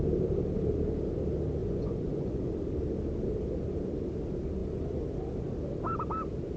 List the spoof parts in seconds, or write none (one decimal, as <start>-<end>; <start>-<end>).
1.6-2.5